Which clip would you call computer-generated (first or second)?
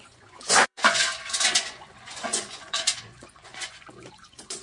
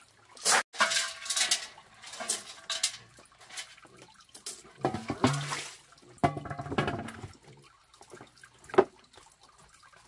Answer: first